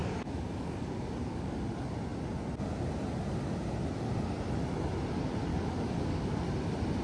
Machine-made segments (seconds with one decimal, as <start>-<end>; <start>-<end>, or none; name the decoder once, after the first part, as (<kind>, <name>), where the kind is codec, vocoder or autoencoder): 0.0-1.6 (codec, DAC); 5.5-6.4